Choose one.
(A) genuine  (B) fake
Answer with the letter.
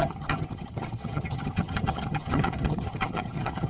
B